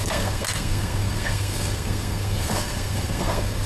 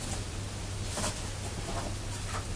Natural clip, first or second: second